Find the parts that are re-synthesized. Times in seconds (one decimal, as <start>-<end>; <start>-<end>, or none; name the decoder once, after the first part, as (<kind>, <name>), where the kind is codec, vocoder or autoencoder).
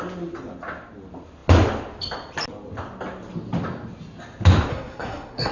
4.7-5.5 (codec, SNAC)